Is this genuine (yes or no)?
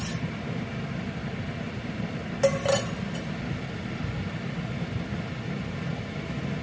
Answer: yes